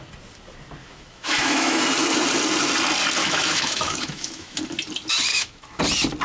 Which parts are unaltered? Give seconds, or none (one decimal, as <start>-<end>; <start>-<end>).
0.0-0.8; 1.8-3.2; 4.6-5.3; 5.8-6.2